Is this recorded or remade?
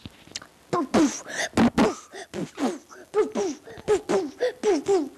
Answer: recorded